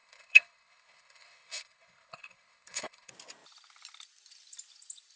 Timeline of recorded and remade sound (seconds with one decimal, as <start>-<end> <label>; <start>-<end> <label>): 0.0-3.1 remade; 3.1-5.2 recorded